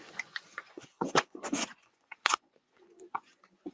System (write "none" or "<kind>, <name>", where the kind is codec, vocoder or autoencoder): vocoder, Vocos